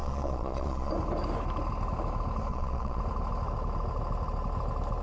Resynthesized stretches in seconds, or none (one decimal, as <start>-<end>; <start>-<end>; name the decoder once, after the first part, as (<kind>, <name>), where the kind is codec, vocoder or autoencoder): 0.0-0.9 (vocoder, Vocos); 2.5-3.0